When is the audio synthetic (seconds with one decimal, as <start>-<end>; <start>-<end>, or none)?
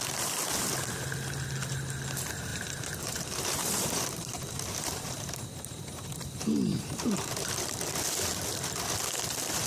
2.5-7.5